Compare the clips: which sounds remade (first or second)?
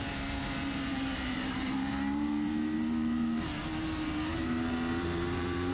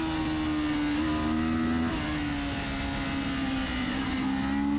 first